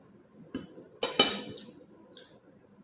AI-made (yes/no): no